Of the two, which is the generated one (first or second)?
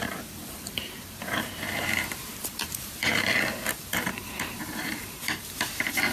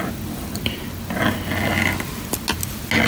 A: first